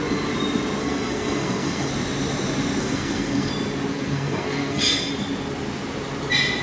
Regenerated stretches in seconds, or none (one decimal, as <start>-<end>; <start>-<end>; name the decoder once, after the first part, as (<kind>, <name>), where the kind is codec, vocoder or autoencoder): 0.8-1.9 (codec, SNAC); 2.8-3.5; 3.9-5.1